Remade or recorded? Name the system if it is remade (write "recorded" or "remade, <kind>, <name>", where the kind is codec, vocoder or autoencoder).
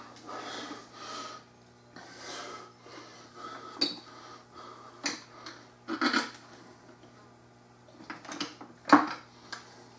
recorded